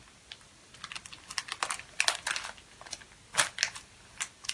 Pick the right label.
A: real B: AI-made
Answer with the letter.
A